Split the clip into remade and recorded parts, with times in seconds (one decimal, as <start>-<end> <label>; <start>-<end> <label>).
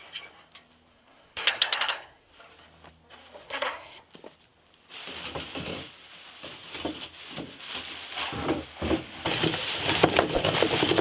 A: 0.0-0.9 recorded; 0.9-2.3 remade; 2.3-3.4 recorded; 3.4-4.0 remade; 4.0-11.0 recorded